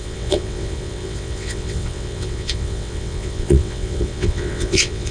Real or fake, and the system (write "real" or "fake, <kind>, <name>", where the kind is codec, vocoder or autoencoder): fake, vocoder, WaveNeXt